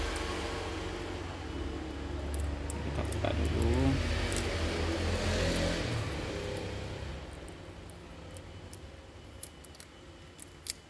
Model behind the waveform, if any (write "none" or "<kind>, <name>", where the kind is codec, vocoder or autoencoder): none